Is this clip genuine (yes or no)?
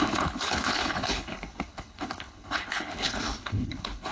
no